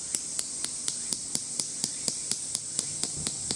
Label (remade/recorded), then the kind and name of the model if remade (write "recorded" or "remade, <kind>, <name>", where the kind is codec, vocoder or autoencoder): recorded